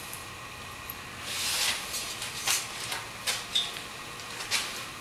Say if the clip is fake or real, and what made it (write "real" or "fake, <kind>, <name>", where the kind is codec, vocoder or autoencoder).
real